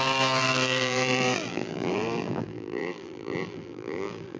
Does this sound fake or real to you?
fake